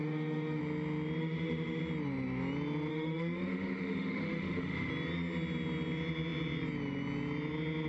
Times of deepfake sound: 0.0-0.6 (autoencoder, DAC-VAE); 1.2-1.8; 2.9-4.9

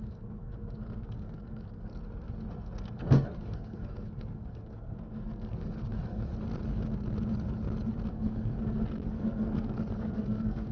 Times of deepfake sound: 0.0-1.9 (codec, SNAC); 2.5-6.3; 8.1-10.7